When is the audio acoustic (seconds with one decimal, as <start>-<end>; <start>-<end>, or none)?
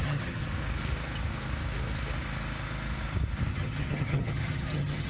0.4-3.5